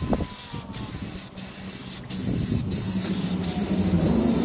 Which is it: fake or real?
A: real